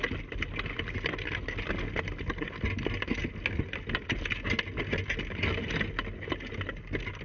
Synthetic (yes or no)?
no